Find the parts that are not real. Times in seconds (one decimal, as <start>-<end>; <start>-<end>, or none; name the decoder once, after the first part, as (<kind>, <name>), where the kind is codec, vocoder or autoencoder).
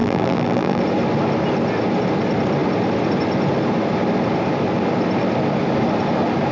0.0-0.8 (vocoder, BigVGAN v2)